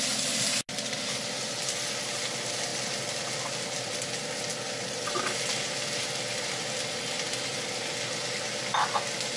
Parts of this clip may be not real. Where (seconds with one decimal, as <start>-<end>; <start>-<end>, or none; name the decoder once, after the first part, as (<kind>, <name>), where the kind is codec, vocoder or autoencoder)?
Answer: none